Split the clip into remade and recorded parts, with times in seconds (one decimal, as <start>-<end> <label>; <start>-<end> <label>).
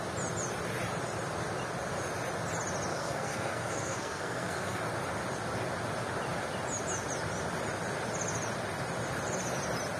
0.0-2.9 recorded; 2.9-4.8 remade; 4.8-10.0 recorded